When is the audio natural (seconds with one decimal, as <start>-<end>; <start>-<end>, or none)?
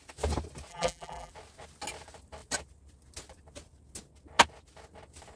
0.0-0.7; 1.3-5.4